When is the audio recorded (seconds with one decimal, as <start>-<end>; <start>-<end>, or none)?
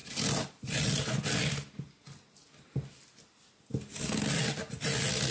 0.0-5.3